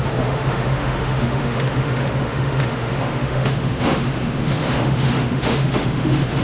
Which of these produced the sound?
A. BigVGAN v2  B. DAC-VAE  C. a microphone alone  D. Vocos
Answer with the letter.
B